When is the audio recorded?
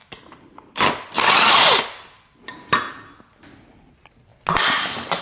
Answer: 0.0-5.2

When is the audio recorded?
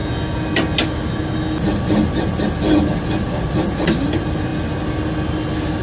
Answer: 0.0-5.8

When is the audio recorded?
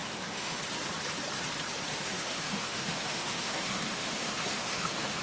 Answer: 0.6-1.9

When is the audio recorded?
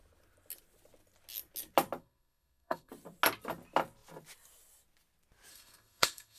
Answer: 0.0-2.0; 2.9-5.5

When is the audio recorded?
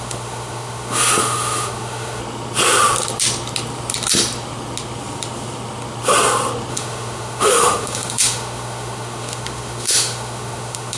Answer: 2.2-6.7